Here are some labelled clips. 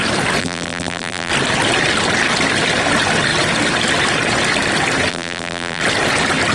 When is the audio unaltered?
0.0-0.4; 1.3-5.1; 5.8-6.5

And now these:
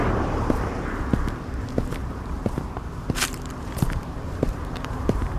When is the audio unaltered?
0.7-2.0

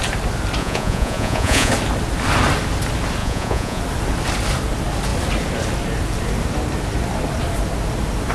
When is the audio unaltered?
0.0-0.6; 1.7-3.2; 3.8-8.3